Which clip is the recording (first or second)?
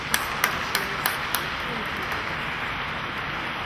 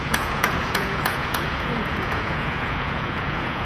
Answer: first